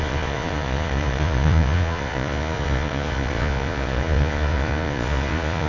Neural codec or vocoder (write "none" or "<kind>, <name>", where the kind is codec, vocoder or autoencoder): vocoder, Vocos